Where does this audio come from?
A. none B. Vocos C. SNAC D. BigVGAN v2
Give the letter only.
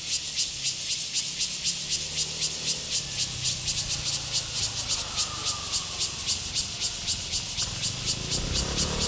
A